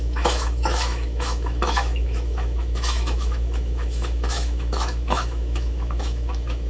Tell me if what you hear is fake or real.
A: fake